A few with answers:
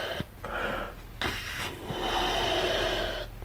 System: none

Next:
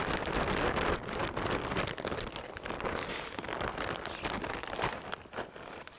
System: none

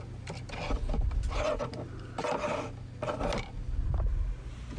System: none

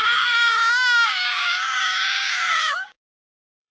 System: codec, DAC